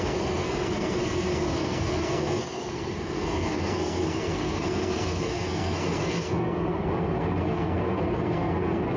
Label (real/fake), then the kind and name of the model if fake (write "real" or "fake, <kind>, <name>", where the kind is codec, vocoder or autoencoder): fake, codec, SNAC